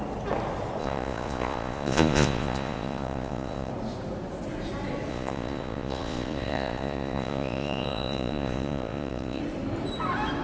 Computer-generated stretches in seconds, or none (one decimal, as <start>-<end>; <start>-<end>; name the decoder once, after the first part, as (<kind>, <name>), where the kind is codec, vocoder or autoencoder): 0.8-3.7 (vocoder, Vocos); 5.1-9.4